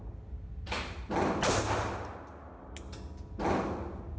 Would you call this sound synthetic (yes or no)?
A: no